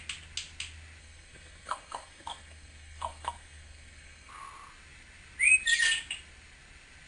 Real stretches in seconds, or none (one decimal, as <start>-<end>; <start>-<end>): 0.0-1.0; 4.3-7.1